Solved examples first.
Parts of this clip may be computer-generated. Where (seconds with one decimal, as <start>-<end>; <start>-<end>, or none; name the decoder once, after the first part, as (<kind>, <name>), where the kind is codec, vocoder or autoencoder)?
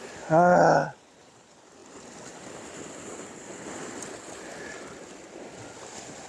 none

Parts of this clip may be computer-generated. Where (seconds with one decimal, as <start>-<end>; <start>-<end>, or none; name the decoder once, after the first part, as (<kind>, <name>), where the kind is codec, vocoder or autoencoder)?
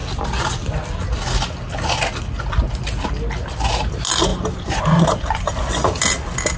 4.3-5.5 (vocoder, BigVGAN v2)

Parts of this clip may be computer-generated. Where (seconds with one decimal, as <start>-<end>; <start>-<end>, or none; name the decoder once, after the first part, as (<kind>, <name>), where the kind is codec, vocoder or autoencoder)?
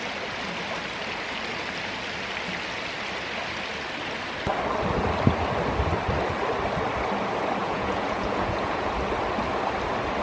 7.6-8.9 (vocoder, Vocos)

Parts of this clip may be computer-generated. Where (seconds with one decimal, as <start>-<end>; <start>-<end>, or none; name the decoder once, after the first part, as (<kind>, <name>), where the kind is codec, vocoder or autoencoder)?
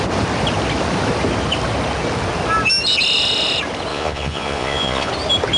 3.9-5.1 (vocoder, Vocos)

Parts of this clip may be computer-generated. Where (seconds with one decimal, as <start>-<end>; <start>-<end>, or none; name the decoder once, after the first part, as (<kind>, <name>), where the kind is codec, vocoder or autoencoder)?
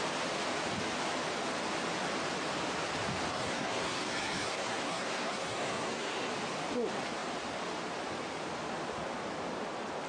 3.3-6.3 (codec, SNAC)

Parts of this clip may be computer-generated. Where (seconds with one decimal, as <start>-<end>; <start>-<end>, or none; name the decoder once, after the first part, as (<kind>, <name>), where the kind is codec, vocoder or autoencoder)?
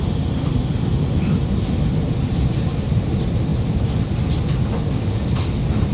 none